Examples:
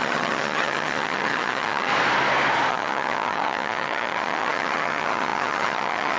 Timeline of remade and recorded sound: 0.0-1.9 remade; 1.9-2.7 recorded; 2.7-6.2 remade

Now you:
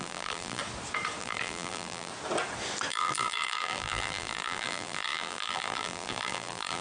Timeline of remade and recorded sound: 0.0-0.6 remade; 0.6-1.2 recorded; 1.2-2.1 remade; 2.1-2.9 recorded; 2.9-6.8 remade

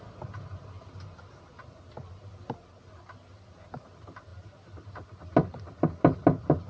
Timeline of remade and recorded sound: 0.0-6.7 recorded

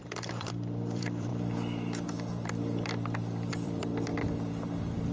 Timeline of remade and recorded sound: 0.0-1.3 remade; 1.3-3.5 recorded; 3.5-3.9 remade; 3.9-5.1 recorded